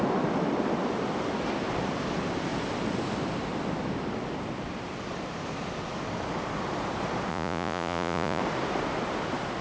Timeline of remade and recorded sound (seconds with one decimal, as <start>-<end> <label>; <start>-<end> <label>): 0.0-7.3 recorded; 7.3-8.4 remade; 8.4-9.6 recorded